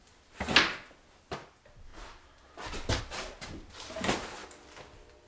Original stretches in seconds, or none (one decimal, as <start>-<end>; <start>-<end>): 0.0-5.3